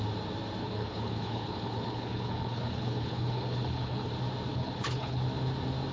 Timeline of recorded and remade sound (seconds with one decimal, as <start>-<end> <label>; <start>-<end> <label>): 0.0-0.6 recorded; 0.6-4.1 remade; 4.1-4.5 recorded; 4.5-5.2 remade; 5.2-5.9 recorded